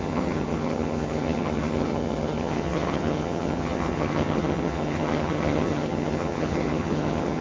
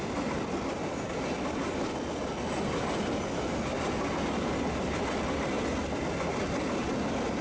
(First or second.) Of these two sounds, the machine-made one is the first